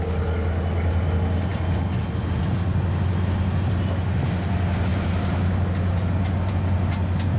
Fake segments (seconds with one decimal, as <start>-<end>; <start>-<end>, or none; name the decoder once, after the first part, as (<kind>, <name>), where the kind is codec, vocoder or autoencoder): none